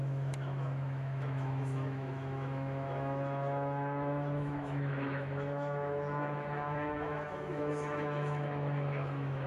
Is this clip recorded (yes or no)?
no